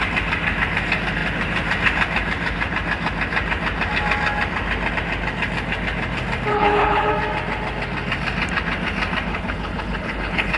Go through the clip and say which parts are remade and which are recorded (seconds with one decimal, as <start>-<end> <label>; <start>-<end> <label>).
0.0-6.5 recorded; 6.5-7.1 remade; 7.1-9.3 recorded; 9.3-10.6 remade